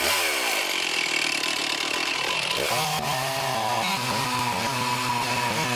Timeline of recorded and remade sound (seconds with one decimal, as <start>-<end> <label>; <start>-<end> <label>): 0.0-5.8 recorded